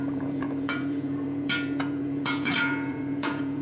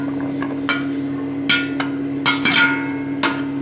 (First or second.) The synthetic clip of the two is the first